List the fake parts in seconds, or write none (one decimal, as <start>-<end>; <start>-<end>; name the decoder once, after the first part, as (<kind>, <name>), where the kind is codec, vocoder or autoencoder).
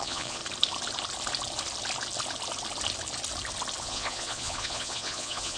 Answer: 0.0-0.4 (vocoder, Vocos); 3.8-5.6